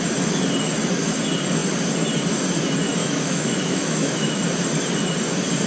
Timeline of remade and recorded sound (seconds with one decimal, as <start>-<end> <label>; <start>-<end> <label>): 0.0-3.0 recorded; 3.0-4.4 remade; 4.4-5.7 recorded